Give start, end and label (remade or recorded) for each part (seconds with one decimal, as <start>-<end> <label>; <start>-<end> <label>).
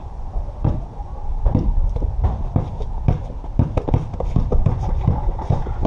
0.0-1.1 remade; 1.1-4.6 recorded; 4.6-5.9 remade